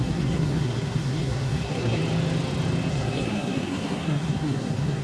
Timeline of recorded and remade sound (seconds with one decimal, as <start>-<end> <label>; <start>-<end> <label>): 0.0-2.0 remade; 2.0-2.9 recorded; 2.9-5.0 remade